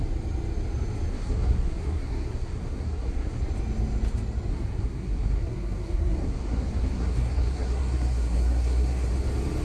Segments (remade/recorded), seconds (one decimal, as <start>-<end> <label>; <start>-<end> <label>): 0.0-1.1 recorded; 1.1-3.4 remade; 3.4-4.5 recorded; 4.5-9.1 remade; 9.1-9.6 recorded